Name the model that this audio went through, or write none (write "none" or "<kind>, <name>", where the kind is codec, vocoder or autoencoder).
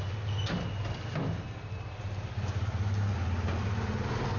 none